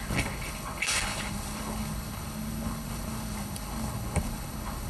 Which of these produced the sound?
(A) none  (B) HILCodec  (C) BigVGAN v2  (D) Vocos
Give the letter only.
B